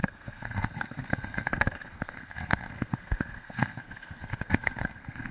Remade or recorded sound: remade